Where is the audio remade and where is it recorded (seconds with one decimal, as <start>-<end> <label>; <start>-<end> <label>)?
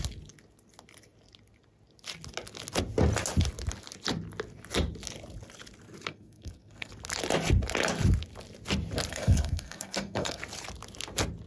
0.0-6.1 recorded; 6.1-6.9 remade; 6.9-9.1 recorded; 9.1-10.4 remade; 10.4-11.5 recorded